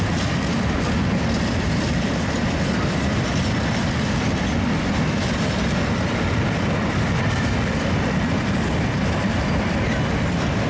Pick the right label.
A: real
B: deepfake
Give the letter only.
B